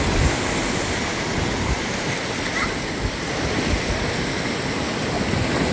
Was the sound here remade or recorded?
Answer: recorded